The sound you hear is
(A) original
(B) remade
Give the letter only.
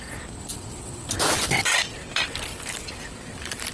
B